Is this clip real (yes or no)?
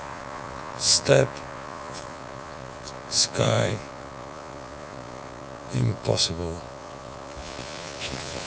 no